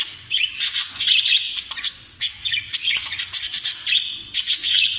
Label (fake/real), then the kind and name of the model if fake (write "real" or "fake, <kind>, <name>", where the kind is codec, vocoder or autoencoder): fake, vocoder, Vocos